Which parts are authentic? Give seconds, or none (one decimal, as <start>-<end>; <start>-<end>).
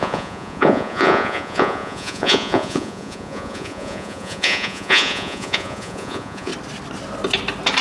6.5-7.8